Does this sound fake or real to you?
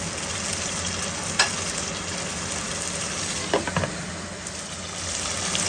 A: real